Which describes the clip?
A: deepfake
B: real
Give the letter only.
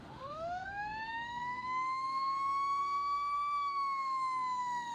A